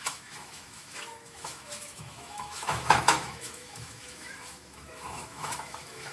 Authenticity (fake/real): fake